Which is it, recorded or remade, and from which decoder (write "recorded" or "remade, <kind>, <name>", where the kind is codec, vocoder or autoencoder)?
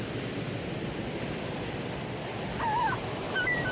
recorded